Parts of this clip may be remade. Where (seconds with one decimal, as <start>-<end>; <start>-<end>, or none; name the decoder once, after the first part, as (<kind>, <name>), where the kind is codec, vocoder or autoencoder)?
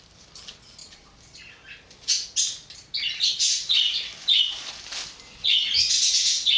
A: none